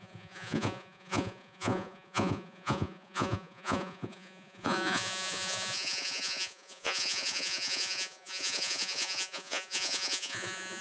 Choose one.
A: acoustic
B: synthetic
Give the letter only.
B